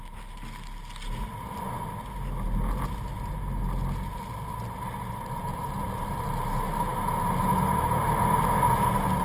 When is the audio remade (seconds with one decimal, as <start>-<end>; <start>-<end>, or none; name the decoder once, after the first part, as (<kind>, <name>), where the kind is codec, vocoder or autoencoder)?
none